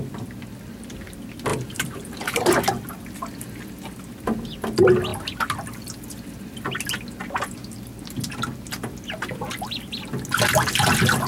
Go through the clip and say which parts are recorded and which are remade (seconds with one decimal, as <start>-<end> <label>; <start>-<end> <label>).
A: 0.0-1.5 recorded; 1.5-2.6 remade; 2.6-11.3 recorded